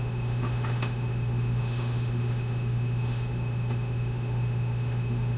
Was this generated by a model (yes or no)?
yes